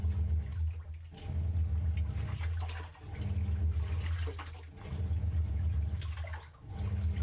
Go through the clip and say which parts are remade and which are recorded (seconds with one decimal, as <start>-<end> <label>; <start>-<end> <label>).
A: 0.0-4.9 recorded; 4.9-5.9 remade; 5.9-7.2 recorded